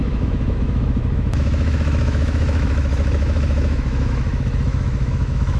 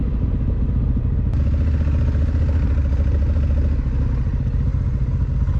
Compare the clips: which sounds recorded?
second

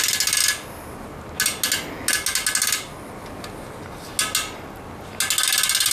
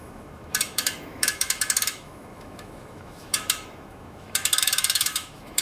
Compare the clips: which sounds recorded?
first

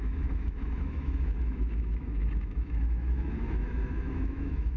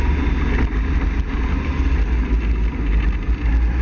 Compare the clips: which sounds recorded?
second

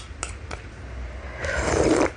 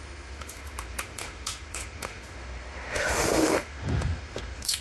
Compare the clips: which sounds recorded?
first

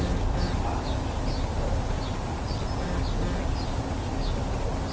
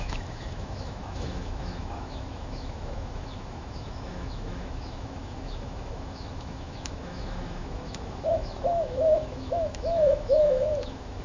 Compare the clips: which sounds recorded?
first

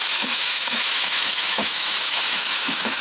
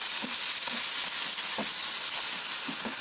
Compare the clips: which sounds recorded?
second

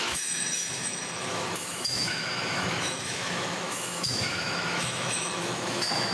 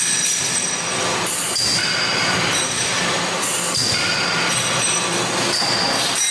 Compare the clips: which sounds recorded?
second